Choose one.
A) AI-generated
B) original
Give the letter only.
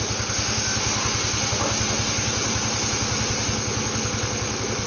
B